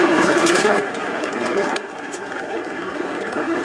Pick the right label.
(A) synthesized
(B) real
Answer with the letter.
A